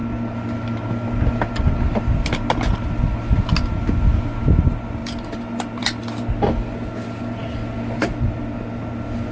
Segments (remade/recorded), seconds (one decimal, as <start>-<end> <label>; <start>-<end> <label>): 0.0-9.3 recorded